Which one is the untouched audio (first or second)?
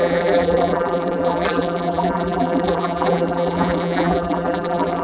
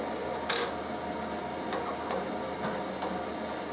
second